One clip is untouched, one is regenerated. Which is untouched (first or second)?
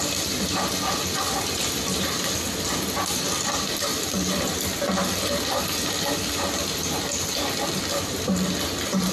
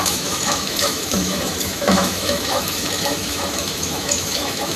first